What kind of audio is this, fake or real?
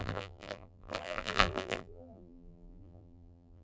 fake